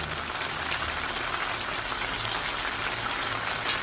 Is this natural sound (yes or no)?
yes